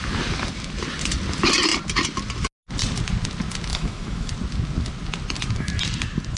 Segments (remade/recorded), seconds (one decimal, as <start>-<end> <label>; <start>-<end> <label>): 0.0-3.7 recorded; 3.7-4.3 remade; 4.3-6.4 recorded